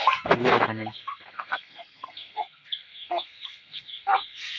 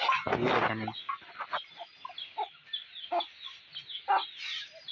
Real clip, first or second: second